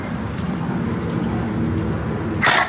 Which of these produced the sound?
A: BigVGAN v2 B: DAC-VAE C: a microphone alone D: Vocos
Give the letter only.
C